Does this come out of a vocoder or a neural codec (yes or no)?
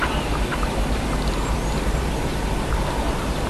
no